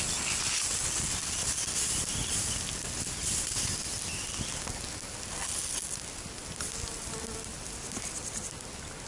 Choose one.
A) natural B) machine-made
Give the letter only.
A